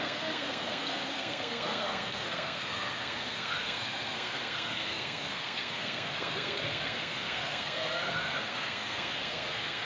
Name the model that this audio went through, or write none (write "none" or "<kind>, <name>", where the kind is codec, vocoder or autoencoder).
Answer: codec, SNAC